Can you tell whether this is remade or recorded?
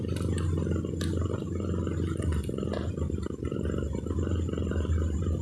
recorded